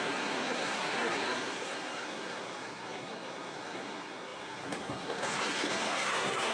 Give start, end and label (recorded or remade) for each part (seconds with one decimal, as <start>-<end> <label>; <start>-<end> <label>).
0.0-6.5 remade